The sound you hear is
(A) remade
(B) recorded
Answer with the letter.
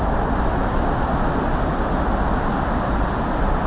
B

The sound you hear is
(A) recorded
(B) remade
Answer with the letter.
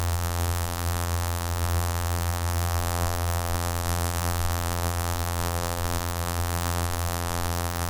B